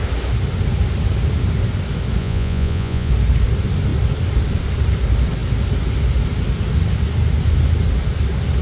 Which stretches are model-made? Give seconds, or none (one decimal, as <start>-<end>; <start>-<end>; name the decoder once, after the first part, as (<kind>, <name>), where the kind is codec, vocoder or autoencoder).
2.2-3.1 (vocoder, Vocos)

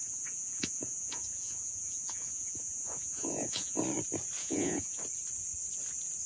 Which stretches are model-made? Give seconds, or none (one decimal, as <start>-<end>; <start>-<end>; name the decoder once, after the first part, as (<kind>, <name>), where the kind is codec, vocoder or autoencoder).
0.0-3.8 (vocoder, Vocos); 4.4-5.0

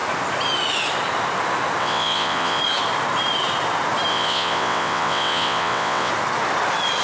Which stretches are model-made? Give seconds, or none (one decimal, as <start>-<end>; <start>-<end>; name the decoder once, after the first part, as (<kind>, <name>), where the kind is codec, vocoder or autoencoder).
1.8-2.6 (vocoder, WaveNeXt); 4.1-6.1

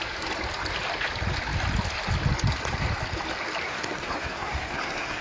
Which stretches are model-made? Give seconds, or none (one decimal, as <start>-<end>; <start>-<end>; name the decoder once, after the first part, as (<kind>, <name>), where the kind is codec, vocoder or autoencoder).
3.7-5.2 (codec, SNAC)